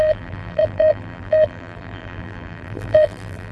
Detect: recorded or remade remade